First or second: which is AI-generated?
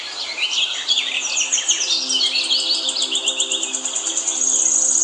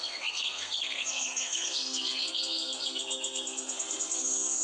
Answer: second